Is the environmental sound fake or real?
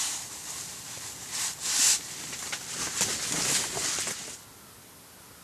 real